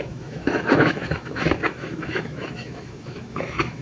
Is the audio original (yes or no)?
no